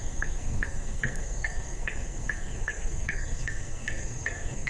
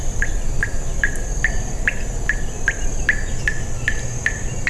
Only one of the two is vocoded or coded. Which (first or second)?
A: first